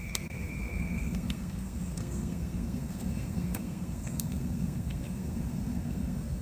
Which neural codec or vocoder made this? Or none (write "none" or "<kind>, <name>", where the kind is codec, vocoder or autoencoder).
codec, SNAC